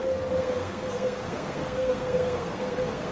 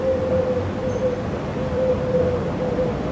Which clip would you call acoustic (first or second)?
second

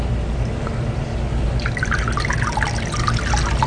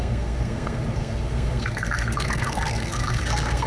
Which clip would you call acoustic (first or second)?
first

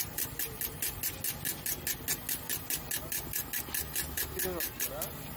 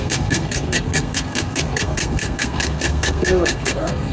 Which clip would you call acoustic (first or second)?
first